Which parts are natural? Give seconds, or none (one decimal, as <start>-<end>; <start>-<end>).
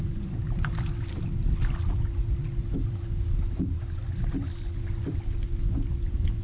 0.7-6.4